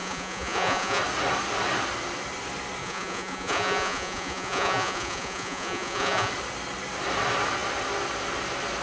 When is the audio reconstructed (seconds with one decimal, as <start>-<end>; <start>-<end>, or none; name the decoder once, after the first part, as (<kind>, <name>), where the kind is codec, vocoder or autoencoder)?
0.0-1.0 (vocoder, Vocos); 2.8-6.3